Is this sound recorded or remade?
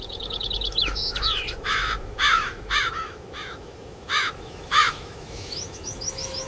remade